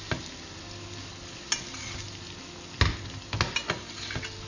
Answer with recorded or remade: recorded